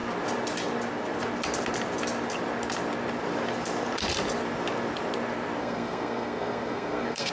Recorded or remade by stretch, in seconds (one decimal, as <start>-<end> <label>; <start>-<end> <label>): 0.0-5.6 recorded; 5.6-7.3 remade